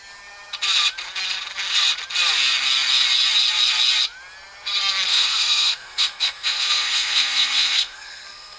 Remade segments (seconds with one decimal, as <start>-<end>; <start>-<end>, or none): 5.1-8.6